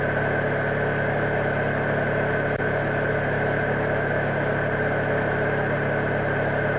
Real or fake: real